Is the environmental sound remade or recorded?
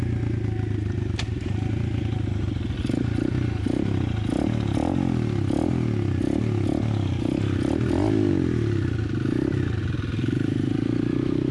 recorded